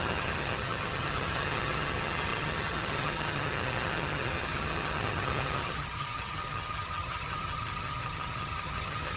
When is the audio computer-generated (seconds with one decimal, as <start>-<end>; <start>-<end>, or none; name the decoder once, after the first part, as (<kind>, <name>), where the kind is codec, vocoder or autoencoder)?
0.0-9.2 (vocoder, HiFi-GAN)